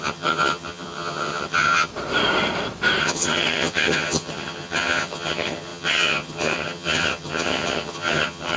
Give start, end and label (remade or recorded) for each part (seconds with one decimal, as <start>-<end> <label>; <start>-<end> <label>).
0.0-1.9 remade; 1.9-3.0 recorded; 3.0-8.6 remade